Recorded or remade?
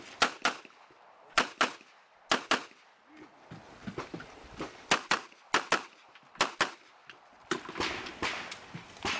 recorded